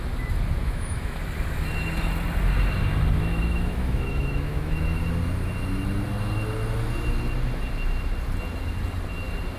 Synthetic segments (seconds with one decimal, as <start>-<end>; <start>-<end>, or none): 0.6-1.2; 3.3-5.0